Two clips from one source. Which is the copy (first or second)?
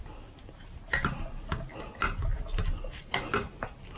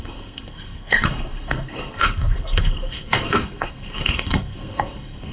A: second